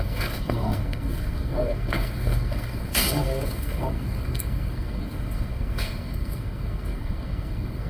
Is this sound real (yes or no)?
no